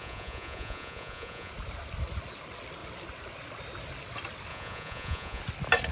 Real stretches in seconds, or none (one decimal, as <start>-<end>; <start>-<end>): 1.5-4.5; 5.4-5.9